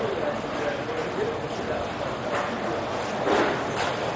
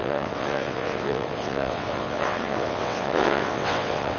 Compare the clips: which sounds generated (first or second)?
second